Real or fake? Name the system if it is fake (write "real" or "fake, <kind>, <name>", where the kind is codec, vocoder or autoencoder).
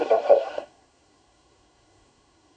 fake, codec, SNAC